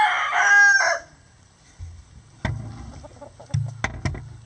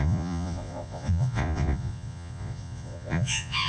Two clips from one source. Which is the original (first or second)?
first